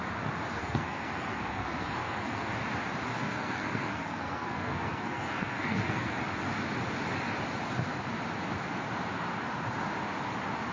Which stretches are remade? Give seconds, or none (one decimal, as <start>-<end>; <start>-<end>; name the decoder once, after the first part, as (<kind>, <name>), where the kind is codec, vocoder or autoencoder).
0.5-2.5 (codec, SNAC); 3.1-6.2